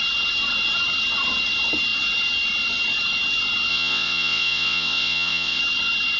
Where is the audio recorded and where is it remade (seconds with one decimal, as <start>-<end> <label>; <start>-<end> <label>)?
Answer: 0.0-3.7 recorded; 3.7-5.6 remade; 5.6-6.2 recorded